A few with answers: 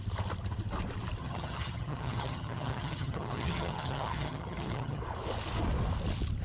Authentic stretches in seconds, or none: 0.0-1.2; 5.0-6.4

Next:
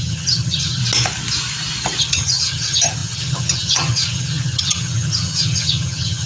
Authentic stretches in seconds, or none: 0.8-2.0

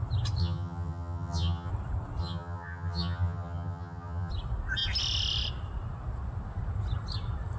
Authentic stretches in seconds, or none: 0.0-0.4; 1.7-2.2; 4.3-7.6